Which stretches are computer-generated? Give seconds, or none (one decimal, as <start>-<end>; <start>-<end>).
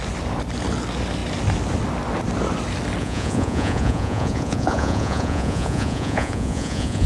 3.0-7.1